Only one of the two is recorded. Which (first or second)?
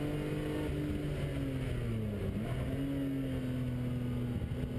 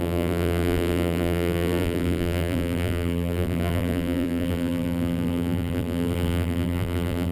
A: first